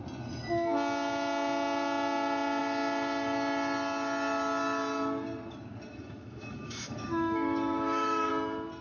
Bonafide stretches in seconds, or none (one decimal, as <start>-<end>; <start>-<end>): 0.0-5.9; 8.3-8.8